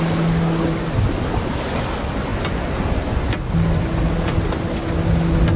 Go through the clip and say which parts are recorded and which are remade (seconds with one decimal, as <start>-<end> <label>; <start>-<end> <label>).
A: 0.0-5.6 recorded